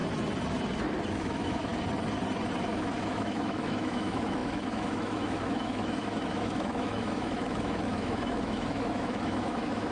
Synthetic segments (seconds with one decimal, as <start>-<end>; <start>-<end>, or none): 1.1-1.7; 2.6-9.9